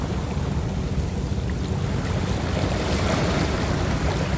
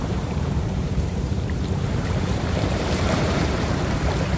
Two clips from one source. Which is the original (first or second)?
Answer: first